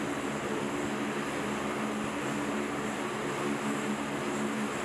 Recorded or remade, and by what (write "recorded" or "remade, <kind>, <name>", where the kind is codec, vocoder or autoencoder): recorded